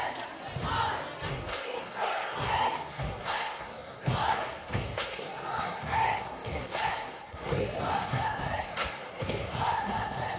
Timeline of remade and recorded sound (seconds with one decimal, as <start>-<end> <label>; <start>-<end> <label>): 0.0-1.3 recorded; 1.3-10.4 remade